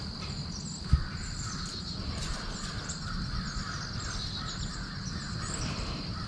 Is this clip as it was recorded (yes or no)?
yes